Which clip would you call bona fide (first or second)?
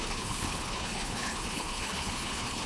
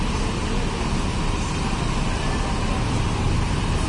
second